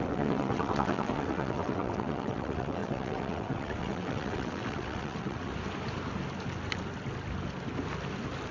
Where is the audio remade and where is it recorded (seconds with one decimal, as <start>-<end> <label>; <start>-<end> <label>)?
0.0-5.5 remade; 5.5-8.5 recorded